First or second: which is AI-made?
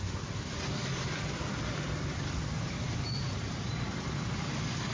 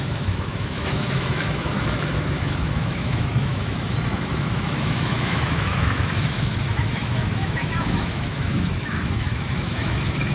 second